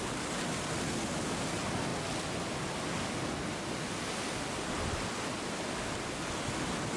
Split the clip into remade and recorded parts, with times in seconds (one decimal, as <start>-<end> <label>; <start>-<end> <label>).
0.0-7.0 recorded